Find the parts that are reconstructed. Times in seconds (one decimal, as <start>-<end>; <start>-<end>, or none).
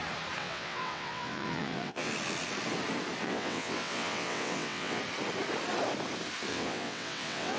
0.4-2.1; 3.2-5.0; 6.5-7.6